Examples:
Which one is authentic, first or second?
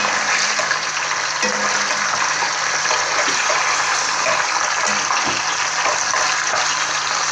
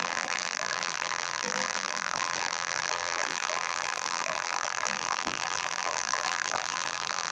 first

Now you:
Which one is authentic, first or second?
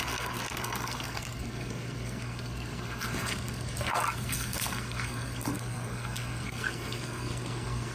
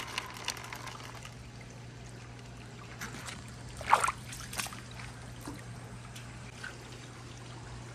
second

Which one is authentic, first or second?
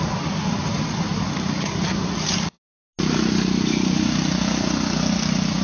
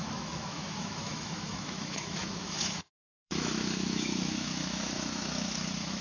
first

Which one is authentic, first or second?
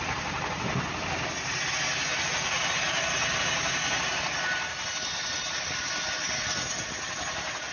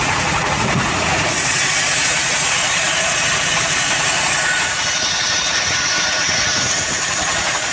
first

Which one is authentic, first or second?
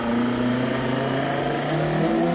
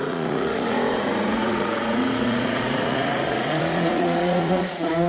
first